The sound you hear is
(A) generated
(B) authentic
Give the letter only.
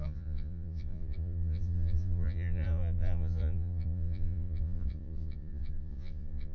A